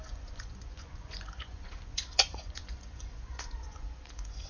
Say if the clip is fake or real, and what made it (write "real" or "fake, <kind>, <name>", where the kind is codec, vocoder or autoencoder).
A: fake, vocoder, Vocos